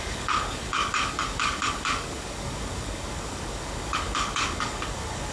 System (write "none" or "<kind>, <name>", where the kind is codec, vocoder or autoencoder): codec, DAC